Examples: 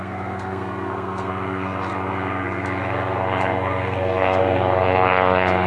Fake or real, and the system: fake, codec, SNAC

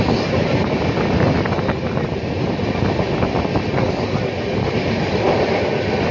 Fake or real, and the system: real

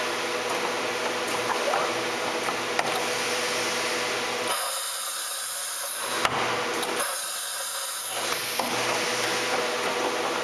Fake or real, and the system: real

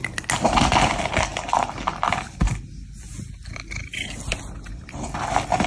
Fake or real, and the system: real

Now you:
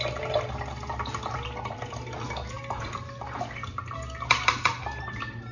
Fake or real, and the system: real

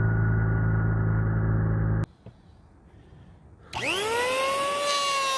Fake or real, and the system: real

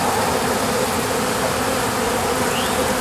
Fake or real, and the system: real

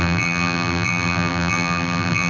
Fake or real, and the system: fake, vocoder, BigVGAN v2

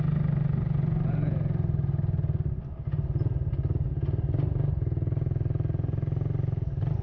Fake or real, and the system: real